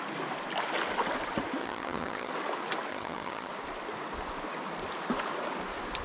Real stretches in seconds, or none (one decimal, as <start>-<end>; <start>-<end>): 0.0-1.6; 2.3-2.9; 3.5-6.0